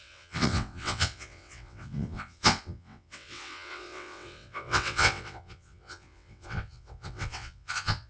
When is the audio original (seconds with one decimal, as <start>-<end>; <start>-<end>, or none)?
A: none